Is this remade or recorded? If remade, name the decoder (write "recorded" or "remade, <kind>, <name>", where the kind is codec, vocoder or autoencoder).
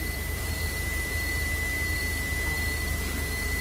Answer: remade, vocoder, BigVGAN v2